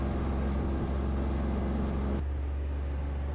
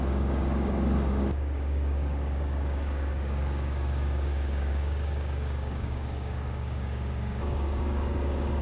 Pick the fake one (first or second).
second